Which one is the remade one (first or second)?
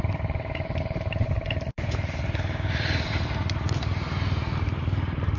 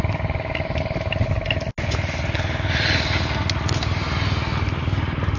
first